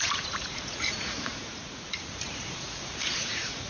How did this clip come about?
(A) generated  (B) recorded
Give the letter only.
A